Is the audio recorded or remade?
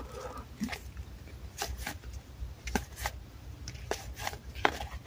remade